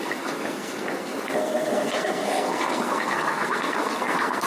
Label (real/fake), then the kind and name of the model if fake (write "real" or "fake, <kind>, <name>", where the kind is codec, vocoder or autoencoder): fake, codec, SNAC